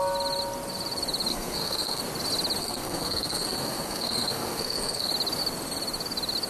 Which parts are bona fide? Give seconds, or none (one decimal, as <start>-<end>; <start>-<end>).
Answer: 0.0-1.3; 2.0-2.6; 5.1-6.5